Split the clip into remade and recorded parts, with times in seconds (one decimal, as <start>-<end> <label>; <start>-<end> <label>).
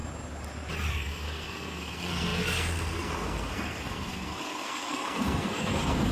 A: 0.0-0.9 recorded; 0.9-6.1 remade